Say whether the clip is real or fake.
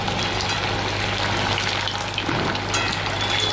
real